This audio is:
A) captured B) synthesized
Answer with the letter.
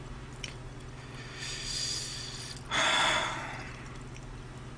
A